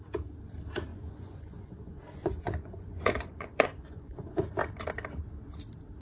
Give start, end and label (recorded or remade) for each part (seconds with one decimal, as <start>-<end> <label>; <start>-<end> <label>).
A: 0.0-0.9 recorded; 0.9-4.5 remade; 4.5-6.0 recorded